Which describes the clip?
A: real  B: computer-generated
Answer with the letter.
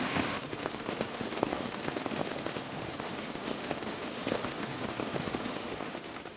B